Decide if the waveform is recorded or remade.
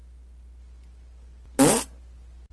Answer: recorded